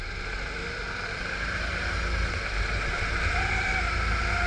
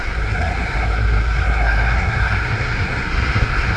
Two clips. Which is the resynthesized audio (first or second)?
second